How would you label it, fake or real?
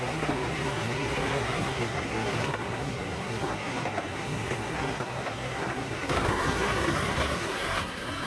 fake